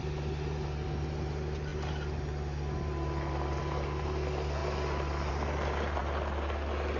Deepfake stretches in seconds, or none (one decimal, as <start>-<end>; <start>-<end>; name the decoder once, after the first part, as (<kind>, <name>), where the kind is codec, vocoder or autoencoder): none